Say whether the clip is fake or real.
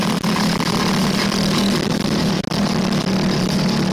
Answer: real